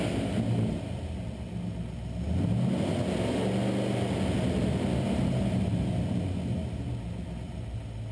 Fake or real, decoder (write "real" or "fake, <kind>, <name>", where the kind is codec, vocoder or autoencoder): real